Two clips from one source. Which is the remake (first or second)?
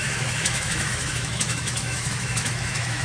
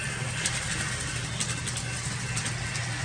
first